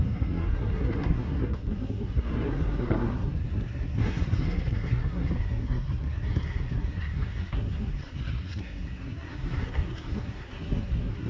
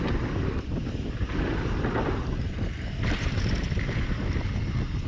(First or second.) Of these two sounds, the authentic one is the second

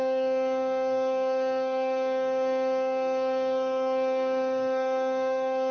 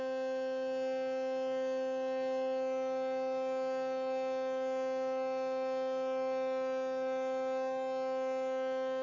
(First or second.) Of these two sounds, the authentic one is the second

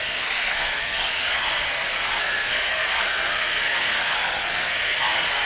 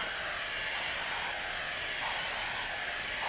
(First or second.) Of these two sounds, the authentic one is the second